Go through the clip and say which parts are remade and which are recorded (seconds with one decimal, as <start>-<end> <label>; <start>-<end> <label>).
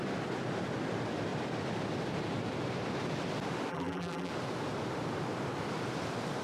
0.0-3.7 recorded; 3.7-4.3 remade; 4.3-6.4 recorded